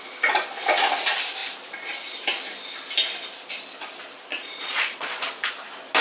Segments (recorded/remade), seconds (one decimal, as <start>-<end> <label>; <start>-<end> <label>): 0.0-4.3 recorded; 4.3-5.5 remade; 5.5-6.0 recorded

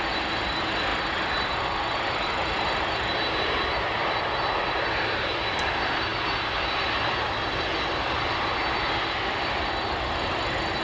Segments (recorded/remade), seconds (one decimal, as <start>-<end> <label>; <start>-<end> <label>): 0.0-10.8 remade

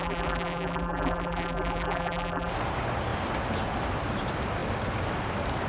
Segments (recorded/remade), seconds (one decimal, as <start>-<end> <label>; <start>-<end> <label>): 0.0-2.5 remade; 2.5-5.7 recorded

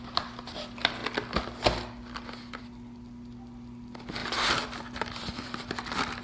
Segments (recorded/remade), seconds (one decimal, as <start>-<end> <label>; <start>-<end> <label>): 0.0-4.2 recorded; 4.2-5.5 remade; 5.5-6.2 recorded

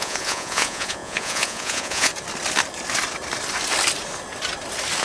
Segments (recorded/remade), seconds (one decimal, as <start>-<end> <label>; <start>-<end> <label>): 0.0-2.1 remade; 2.1-5.0 recorded